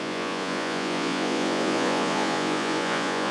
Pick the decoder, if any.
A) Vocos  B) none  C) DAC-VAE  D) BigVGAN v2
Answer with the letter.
A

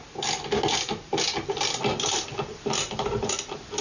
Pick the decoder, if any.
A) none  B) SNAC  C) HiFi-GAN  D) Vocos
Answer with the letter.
A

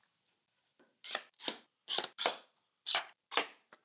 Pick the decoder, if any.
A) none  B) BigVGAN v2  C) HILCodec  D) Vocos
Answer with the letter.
A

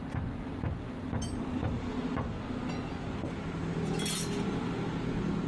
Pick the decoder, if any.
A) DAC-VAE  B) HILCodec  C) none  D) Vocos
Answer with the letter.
C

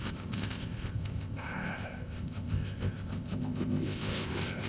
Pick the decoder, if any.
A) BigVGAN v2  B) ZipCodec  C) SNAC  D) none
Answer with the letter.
B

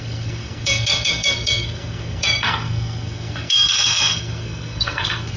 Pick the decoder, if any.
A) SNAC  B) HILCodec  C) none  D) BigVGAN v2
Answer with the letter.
A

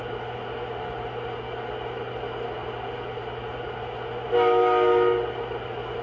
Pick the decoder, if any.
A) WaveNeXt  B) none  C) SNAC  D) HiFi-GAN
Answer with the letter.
B